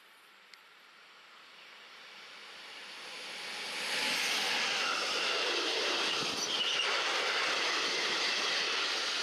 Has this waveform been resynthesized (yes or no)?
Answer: no